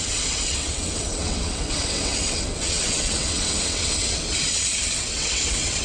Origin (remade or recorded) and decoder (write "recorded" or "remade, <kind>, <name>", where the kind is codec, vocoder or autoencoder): remade, vocoder, WaveNeXt